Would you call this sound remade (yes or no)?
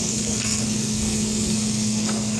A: yes